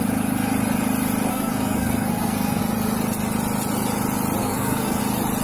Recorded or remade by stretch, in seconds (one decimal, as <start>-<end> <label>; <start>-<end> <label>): 0.0-1.3 recorded; 1.3-2.6 remade; 2.6-4.4 recorded; 4.4-5.0 remade; 5.0-5.4 recorded